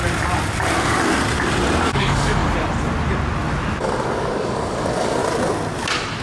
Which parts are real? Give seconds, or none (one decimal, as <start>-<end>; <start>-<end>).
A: 0.0-1.9; 2.4-3.8; 5.2-6.2